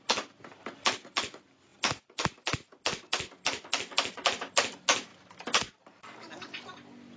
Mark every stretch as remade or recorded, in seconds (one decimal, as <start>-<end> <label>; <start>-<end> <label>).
0.0-7.2 recorded